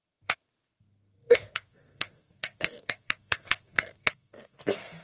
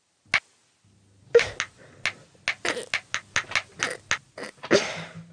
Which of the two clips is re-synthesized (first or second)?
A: first